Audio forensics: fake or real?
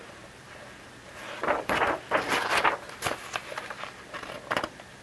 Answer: real